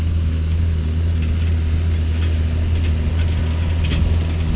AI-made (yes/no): no